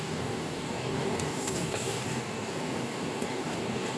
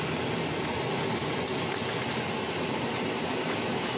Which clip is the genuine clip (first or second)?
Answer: second